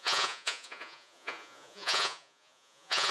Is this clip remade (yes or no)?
yes